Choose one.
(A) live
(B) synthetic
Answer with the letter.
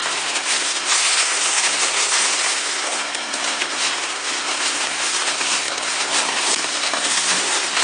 B